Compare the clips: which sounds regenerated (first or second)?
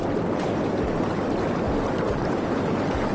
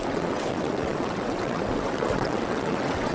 second